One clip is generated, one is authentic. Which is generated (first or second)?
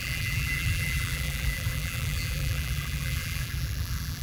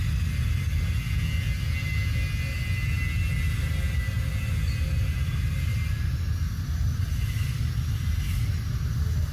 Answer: first